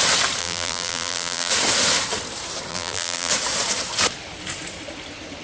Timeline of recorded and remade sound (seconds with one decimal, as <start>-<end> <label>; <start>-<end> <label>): 0.0-0.4 recorded; 0.4-1.5 remade; 1.5-2.7 recorded; 2.7-3.3 remade; 3.3-5.4 recorded